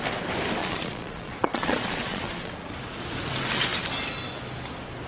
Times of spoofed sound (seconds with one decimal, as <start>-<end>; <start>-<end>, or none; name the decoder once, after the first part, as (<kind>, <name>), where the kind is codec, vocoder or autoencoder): 0.6-2.5 (vocoder, Vocos)